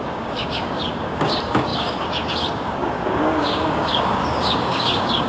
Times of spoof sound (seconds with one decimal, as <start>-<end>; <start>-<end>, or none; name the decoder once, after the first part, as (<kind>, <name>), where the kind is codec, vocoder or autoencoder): 0.0-5.3 (codec, DAC)